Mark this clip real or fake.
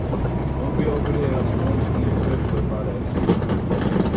fake